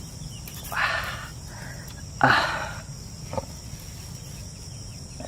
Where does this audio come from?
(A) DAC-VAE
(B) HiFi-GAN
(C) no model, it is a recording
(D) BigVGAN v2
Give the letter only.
C